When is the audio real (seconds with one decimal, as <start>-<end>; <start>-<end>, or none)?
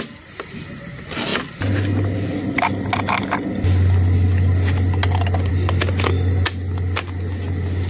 0.0-7.9